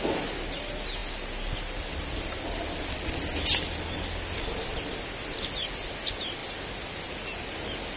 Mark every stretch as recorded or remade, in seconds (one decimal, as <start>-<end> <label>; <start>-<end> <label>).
0.0-8.0 recorded